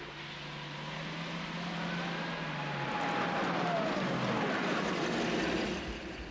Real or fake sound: real